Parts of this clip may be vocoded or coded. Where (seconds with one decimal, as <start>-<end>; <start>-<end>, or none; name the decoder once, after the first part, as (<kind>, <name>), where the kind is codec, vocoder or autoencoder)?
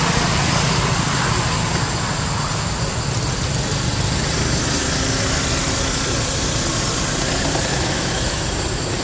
7.7-8.5 (autoencoder, DAC-VAE)